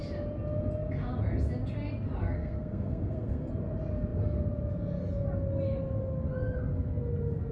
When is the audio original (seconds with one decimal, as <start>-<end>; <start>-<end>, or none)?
0.0-2.2; 3.5-7.5